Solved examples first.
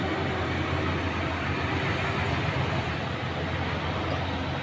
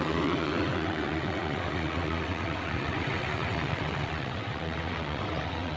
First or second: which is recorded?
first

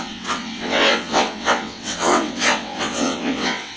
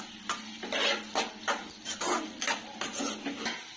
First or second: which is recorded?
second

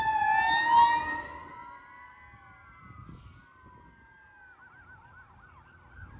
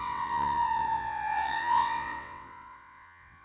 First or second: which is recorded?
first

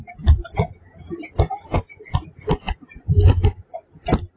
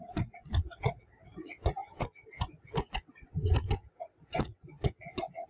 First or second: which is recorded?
first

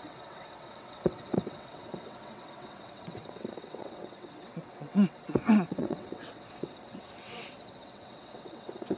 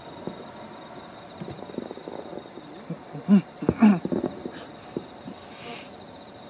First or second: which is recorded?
second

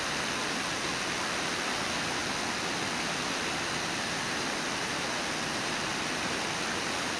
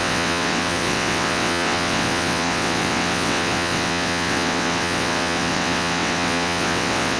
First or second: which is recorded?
first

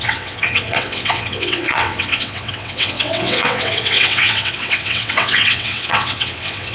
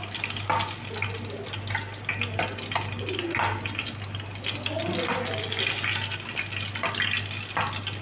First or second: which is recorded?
second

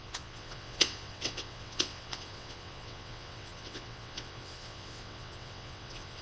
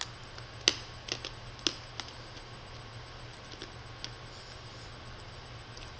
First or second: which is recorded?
second